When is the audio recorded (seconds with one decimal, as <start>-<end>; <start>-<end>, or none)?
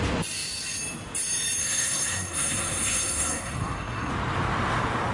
0.0-1.6; 4.1-5.1